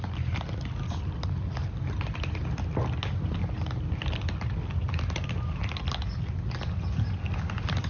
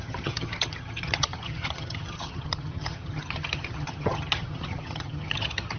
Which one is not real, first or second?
second